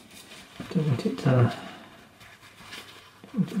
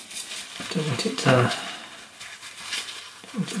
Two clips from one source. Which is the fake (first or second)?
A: first